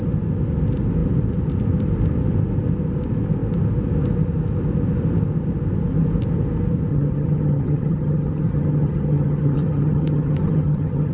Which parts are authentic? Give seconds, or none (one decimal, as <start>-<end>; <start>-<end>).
0.0-6.9